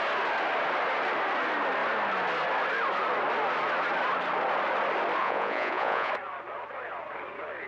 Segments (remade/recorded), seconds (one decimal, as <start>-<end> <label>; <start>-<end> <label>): 0.0-5.2 recorded; 5.2-6.1 remade; 6.1-7.7 recorded